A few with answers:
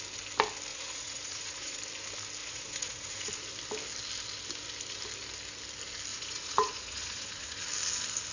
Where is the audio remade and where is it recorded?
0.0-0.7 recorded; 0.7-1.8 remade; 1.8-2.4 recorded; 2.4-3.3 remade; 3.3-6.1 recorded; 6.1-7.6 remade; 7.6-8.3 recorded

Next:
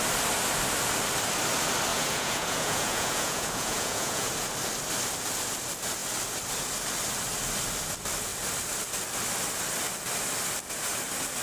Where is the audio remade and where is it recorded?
0.0-1.9 recorded; 1.9-4.3 remade; 4.3-11.4 recorded

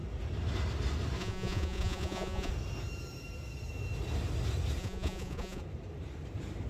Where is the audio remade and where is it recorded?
0.0-1.2 recorded; 1.2-2.5 remade; 2.5-4.8 recorded; 4.8-5.6 remade; 5.6-6.7 recorded

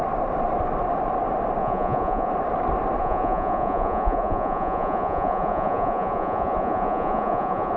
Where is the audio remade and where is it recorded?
0.0-1.6 recorded; 1.6-2.3 remade; 2.3-3.0 recorded; 3.0-7.8 remade

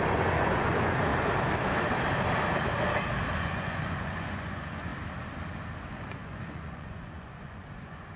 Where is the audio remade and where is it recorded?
0.0-1.1 remade; 1.1-3.4 recorded; 3.4-4.9 remade; 4.9-5.8 recorded; 5.8-8.2 remade

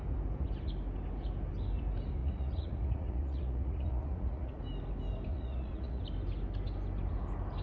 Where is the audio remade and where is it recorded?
0.0-2.2 recorded; 2.2-4.6 remade; 4.6-5.3 recorded; 5.3-6.0 remade; 6.0-7.6 recorded

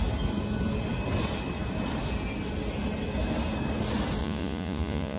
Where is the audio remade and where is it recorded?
0.0-4.2 recorded; 4.2-5.2 remade